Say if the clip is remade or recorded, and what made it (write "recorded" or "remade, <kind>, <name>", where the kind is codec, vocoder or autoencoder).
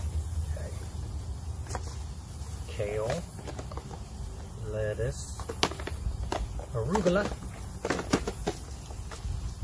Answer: recorded